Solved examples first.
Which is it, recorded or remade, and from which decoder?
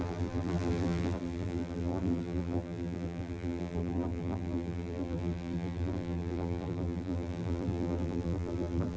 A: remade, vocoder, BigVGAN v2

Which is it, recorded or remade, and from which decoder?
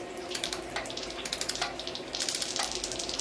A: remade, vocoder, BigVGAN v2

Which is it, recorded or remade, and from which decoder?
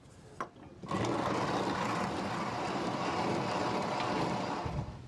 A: recorded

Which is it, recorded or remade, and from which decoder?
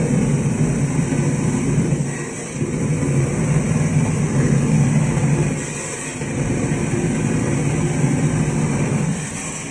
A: recorded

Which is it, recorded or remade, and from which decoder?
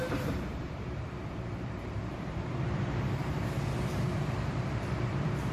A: remade, vocoder, BigVGAN v2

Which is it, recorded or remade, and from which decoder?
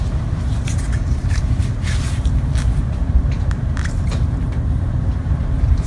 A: remade, vocoder, BigVGAN v2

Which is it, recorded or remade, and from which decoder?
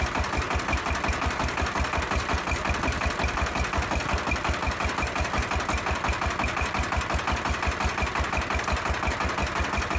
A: recorded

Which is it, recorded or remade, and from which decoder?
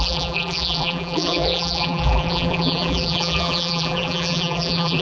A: remade, vocoder, BigVGAN v2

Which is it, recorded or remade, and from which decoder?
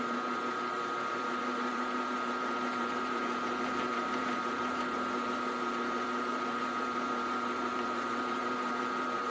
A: remade, vocoder, BigVGAN v2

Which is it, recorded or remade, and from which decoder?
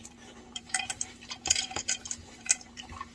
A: remade, vocoder, BigVGAN v2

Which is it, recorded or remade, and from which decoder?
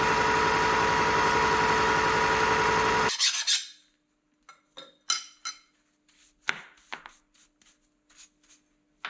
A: recorded